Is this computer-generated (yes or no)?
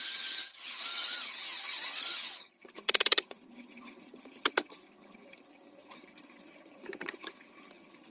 yes